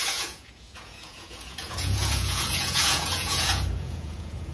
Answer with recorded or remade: remade